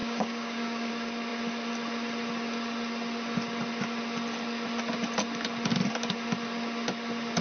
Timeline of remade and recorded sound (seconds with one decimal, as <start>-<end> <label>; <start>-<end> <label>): 0.0-0.9 remade; 0.9-7.4 recorded